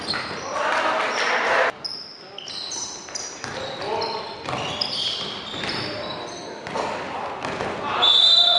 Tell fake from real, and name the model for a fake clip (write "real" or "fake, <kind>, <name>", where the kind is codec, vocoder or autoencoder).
real